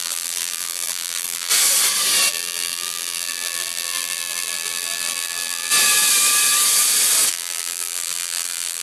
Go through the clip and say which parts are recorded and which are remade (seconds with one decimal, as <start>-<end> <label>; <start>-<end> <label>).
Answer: 0.0-1.5 remade; 1.5-2.3 recorded; 2.3-5.7 remade; 5.7-7.3 recorded; 7.3-8.8 remade